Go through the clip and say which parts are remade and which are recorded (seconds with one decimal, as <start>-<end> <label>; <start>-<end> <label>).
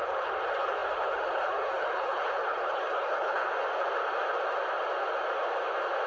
0.0-3.4 remade; 3.4-6.1 recorded